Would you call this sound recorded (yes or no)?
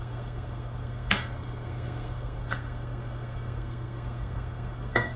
no